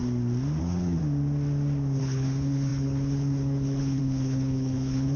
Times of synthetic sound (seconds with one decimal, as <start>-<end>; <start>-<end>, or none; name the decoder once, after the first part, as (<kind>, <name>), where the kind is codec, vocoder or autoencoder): 0.6-1.0 (codec, HILCodec); 2.0-5.2